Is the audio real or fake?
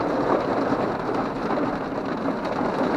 real